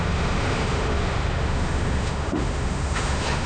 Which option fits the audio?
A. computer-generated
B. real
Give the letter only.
A